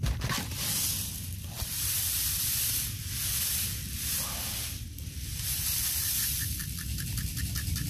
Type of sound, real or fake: fake